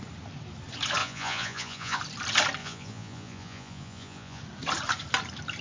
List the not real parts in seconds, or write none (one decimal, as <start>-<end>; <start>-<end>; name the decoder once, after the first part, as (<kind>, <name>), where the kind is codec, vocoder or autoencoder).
1.0-2.0 (vocoder, Vocos); 2.6-4.4